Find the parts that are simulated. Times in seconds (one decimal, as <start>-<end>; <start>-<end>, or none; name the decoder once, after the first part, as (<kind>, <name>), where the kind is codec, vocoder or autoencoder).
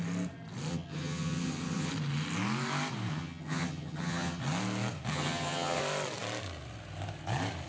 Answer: 0.7-1.9 (vocoder, HiFi-GAN); 3.1-4.4; 5.1-5.8